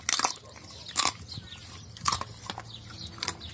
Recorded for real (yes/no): yes